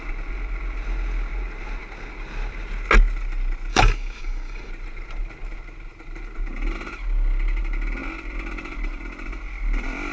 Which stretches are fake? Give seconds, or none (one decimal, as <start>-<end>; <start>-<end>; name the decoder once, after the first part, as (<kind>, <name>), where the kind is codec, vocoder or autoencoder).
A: 3.7-4.7 (codec, DAC)